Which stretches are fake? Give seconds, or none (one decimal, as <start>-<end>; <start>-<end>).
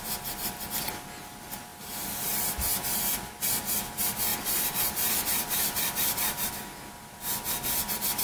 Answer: 1.7-2.4; 4.3-6.5